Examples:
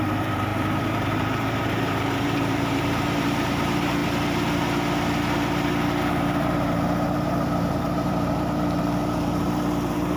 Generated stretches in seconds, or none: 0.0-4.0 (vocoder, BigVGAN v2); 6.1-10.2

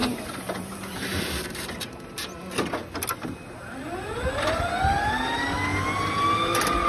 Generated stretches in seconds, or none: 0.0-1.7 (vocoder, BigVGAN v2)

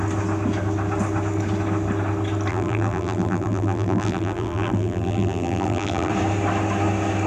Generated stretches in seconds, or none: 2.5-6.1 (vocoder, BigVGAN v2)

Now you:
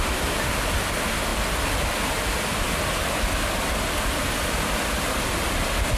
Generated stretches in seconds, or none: none

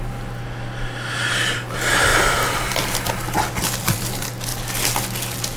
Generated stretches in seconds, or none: 2.1-2.7 (vocoder, BigVGAN v2)

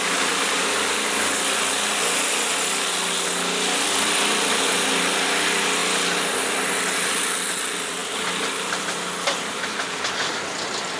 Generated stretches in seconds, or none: 5.8-6.7 (vocoder, BigVGAN v2); 8.0-10.0